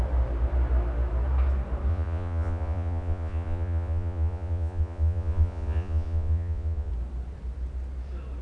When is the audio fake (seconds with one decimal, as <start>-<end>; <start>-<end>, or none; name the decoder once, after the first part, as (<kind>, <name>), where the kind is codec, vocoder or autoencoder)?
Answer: 1.9-6.9 (vocoder, Vocos)